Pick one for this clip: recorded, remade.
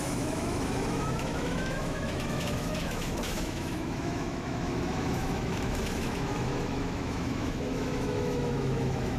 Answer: remade